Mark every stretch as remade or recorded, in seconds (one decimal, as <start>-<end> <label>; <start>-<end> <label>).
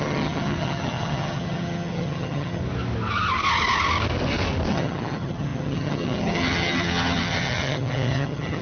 0.0-2.6 remade; 2.6-4.7 recorded; 4.7-8.6 remade